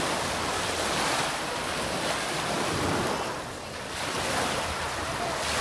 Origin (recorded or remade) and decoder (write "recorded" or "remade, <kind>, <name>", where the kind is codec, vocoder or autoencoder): recorded